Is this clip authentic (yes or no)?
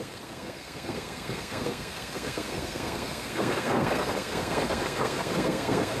no